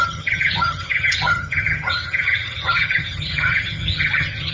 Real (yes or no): no